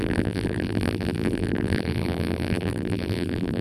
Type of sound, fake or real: fake